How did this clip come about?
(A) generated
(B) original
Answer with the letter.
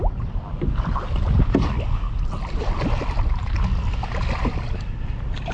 B